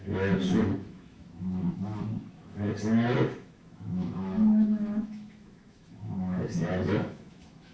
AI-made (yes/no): yes